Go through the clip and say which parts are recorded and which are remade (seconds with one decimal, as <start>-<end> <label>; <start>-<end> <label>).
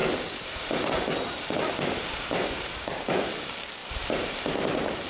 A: 0.0-3.1 remade; 3.1-3.8 recorded; 3.8-5.1 remade